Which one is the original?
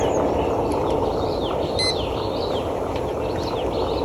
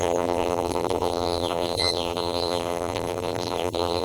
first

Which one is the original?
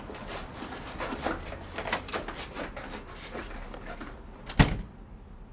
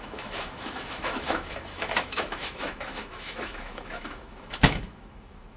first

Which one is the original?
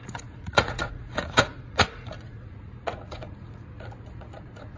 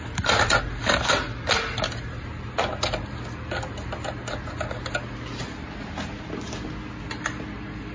second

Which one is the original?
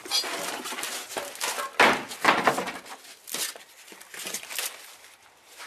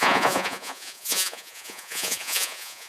first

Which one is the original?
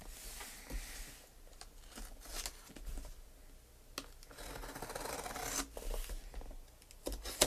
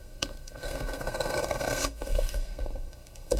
first